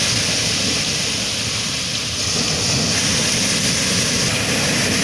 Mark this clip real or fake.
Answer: real